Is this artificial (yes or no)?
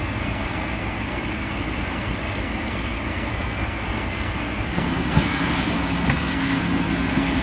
yes